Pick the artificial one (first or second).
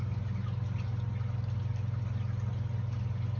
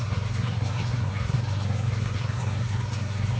second